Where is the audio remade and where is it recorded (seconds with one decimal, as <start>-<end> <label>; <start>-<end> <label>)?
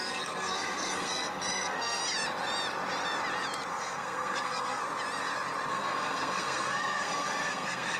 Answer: 0.0-2.0 remade; 2.0-3.7 recorded; 3.7-4.8 remade; 4.8-5.7 recorded; 5.7-8.0 remade